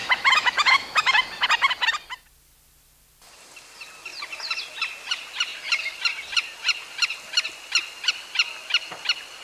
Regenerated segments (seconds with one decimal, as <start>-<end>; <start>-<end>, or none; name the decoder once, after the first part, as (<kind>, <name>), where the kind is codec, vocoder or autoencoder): 0.0-1.2 (autoencoder, DAC-VAE)